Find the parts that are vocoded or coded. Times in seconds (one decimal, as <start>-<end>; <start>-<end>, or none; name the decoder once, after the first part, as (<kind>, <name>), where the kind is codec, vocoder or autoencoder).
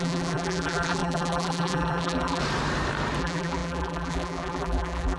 0.0-2.4 (vocoder, BigVGAN v2); 3.2-5.2